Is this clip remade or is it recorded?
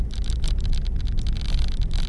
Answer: remade